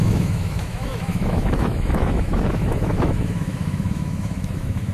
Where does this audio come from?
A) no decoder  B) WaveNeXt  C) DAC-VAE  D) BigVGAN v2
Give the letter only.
C